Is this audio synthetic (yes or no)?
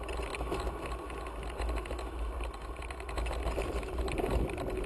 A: no